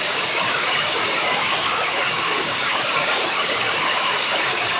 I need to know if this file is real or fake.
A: fake